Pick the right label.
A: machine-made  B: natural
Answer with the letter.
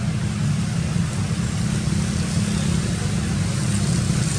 B